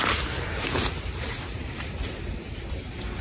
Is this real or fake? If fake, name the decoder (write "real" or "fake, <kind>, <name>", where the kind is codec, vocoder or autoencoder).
fake, vocoder, BigVGAN v2